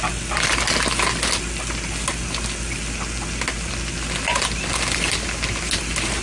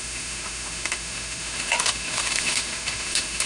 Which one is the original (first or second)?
first